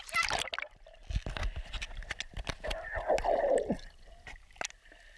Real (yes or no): yes